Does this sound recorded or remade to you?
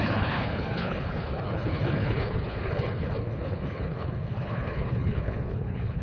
remade